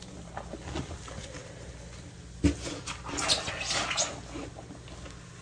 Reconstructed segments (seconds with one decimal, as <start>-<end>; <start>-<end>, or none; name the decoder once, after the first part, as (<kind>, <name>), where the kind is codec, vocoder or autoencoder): none